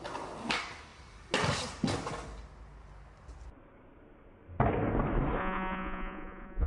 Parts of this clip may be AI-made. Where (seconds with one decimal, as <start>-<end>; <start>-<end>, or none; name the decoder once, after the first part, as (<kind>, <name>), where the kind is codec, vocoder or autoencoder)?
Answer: 5.4-6.7 (vocoder, Vocos)